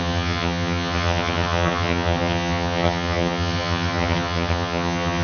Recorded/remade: remade